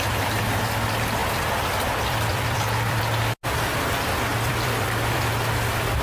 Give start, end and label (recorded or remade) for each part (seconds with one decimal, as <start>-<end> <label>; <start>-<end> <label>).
0.0-1.2 recorded; 1.2-3.0 remade; 3.0-4.3 recorded; 4.3-5.2 remade; 5.2-6.0 recorded